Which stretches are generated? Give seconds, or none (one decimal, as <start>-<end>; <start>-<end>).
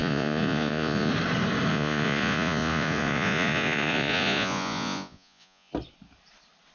0.0-1.1; 1.7-5.7